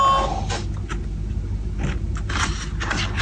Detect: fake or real real